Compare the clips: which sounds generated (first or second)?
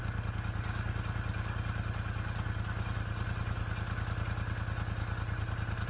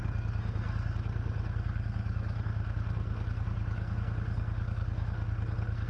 second